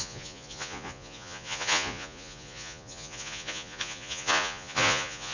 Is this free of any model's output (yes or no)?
no